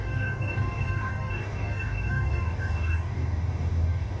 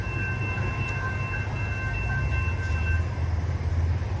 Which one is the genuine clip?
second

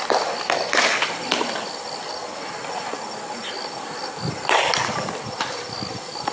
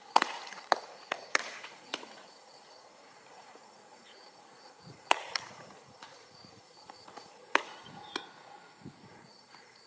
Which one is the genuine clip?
first